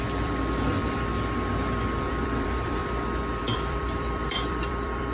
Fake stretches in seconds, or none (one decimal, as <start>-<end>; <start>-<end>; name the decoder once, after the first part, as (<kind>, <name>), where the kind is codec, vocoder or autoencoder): 0.0-0.8 (vocoder, BigVGAN v2); 2.1-2.8; 3.4-5.1